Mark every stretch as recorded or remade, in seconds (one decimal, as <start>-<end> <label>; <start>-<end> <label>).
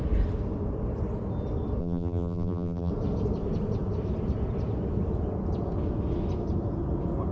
0.0-1.8 recorded; 1.8-2.9 remade; 2.9-7.3 recorded